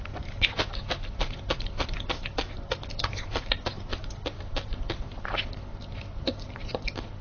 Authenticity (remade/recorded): recorded